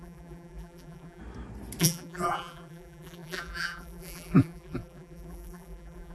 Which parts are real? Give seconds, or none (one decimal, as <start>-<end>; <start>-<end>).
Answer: 1.2-1.8